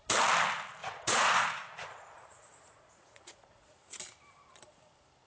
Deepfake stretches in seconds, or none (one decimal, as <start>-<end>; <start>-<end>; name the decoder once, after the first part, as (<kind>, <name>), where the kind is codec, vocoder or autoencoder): 0.8-4.0 (vocoder, Vocos)